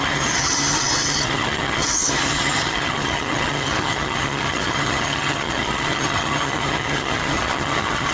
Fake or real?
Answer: fake